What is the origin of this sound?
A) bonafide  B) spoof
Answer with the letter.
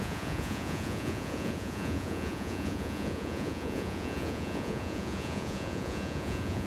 B